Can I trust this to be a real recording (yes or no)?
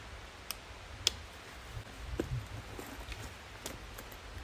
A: yes